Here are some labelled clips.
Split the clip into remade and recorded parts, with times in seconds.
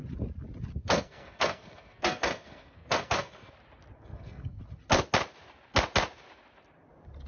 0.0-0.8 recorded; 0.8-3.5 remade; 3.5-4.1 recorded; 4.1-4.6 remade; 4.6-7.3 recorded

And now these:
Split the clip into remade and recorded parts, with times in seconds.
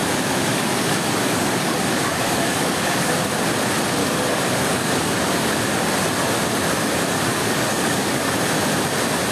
0.0-3.1 remade; 3.1-4.0 recorded; 4.0-5.9 remade; 5.9-7.3 recorded; 7.3-8.3 remade; 8.3-9.3 recorded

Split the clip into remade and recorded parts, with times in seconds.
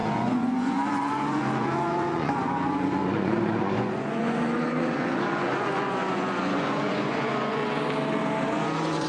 0.0-7.6 remade; 7.6-8.5 recorded; 8.5-9.1 remade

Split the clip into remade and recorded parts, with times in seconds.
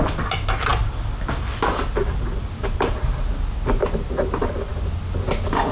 0.0-5.7 recorded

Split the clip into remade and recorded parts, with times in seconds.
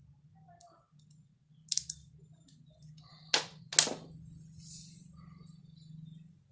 0.0-6.5 recorded